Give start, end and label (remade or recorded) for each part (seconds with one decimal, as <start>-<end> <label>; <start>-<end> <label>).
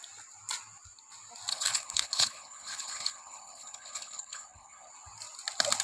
0.0-1.5 recorded; 1.5-4.9 remade; 4.9-5.8 recorded